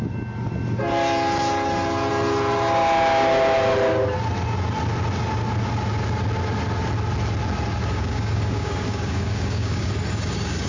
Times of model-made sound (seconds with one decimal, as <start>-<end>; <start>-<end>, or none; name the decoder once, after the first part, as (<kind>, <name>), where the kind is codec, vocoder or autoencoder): 7.8-9.9 (codec, DAC)